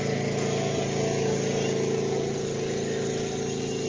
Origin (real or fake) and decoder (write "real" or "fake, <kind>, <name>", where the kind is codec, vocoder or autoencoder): real